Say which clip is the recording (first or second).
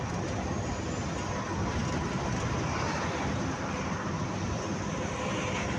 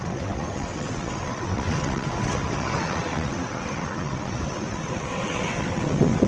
first